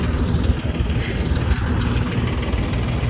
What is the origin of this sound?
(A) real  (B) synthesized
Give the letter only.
A